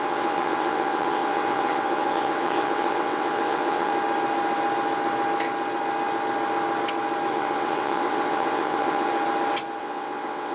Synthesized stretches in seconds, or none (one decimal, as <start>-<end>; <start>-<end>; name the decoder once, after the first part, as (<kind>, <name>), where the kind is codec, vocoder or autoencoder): 0.0-3.9 (vocoder, WaveNeXt); 7.3-9.1; 9.8-10.5